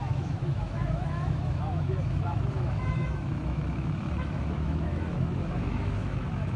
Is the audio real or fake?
fake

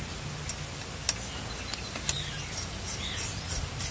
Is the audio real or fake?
real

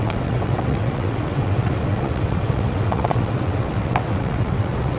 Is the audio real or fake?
fake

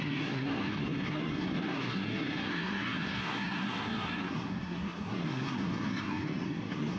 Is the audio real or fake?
fake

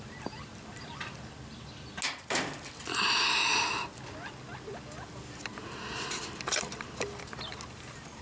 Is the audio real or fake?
real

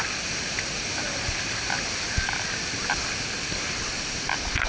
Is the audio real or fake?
real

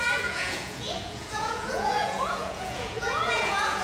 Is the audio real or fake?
fake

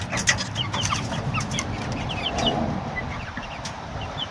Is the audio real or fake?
real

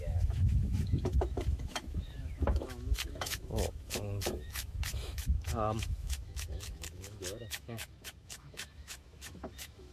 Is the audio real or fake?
fake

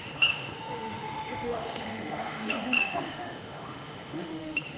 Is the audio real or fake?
fake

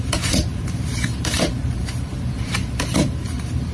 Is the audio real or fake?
fake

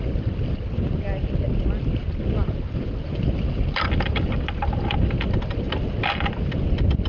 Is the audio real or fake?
real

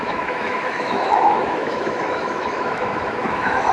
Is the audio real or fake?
fake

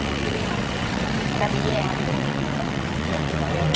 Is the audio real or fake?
fake